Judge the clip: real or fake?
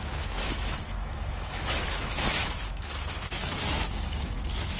fake